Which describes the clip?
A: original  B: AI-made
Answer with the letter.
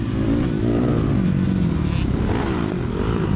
A